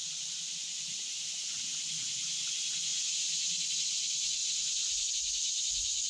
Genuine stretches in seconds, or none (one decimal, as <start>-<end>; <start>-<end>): 1.2-2.9; 3.7-4.4; 5.1-6.1